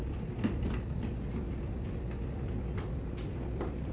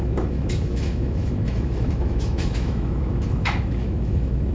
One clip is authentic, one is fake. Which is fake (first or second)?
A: second